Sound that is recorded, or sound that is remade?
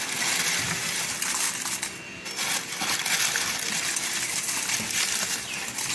recorded